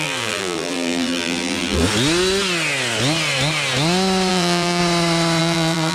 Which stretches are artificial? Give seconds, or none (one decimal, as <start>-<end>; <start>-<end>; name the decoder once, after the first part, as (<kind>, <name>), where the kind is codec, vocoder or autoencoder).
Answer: 0.0-1.8 (vocoder, BigVGAN v2); 4.3-4.8; 5.4-5.9